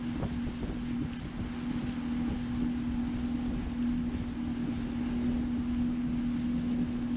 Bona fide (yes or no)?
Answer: yes